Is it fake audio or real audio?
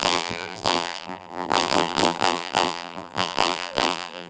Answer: fake